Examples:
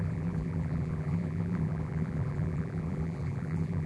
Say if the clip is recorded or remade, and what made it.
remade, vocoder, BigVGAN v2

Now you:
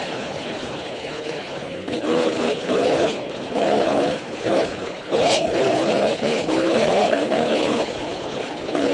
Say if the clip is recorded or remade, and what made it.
remade, codec, HILCodec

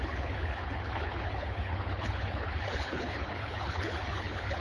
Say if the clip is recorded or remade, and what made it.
remade, codec, HILCodec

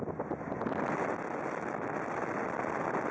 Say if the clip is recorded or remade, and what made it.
recorded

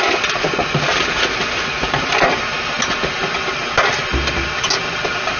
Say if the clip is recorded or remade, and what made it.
recorded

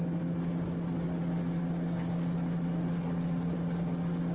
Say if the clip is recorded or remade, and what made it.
recorded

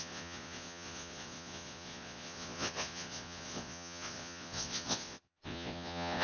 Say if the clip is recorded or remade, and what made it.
remade, vocoder, Vocos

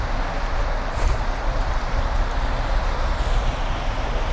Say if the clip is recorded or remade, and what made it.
recorded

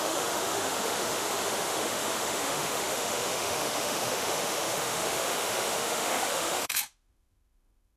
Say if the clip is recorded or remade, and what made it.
remade, autoencoder, DAC-VAE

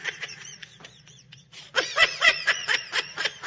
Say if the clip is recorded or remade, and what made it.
remade, vocoder, Vocos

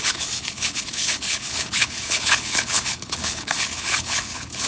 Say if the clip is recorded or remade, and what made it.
remade, codec, HILCodec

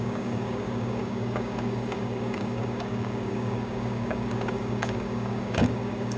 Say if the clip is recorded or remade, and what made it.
remade, codec, DAC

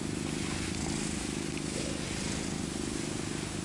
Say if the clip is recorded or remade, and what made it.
recorded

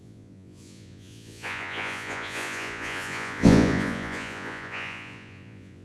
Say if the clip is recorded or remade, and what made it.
remade, vocoder, Vocos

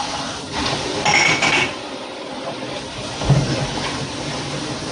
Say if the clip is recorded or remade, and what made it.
recorded